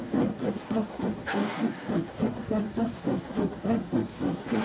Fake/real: fake